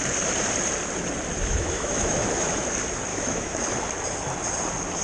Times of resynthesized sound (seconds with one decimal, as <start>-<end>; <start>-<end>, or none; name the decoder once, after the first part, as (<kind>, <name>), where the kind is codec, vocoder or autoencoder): 1.5-2.5 (autoencoder, DAC-VAE); 3.1-3.6